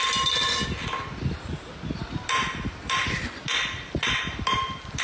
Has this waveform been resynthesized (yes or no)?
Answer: no